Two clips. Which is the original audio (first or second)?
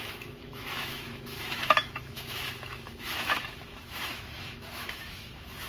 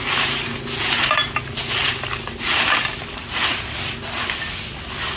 second